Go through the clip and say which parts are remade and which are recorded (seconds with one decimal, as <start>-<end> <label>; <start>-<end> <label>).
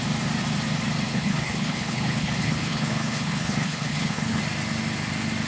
0.0-1.1 recorded; 1.1-4.4 remade; 4.4-5.5 recorded